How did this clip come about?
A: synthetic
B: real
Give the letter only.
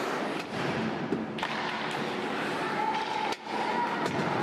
A